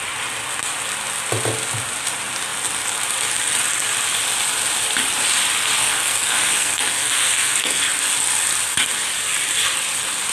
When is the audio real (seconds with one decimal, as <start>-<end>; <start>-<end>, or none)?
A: 0.0-5.8; 7.8-10.3